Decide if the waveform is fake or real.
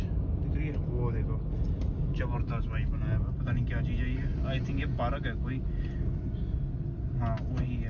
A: real